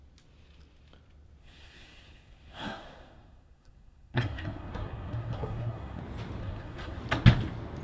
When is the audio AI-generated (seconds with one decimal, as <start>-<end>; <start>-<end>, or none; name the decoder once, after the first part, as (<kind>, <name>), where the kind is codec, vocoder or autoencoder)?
1.4-6.0 (codec, SNAC); 6.4-7.0